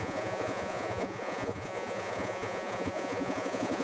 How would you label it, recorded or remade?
remade